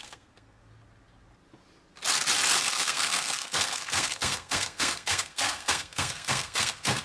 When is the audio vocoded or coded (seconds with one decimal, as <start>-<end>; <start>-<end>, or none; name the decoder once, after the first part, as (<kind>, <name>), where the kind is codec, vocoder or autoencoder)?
0.0-0.6 (codec, SNAC); 2.6-7.0